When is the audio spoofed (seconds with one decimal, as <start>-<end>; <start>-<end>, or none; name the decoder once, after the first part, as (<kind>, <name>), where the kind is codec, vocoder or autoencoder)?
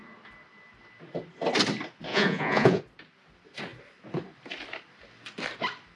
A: 2.1-2.8 (vocoder, Vocos)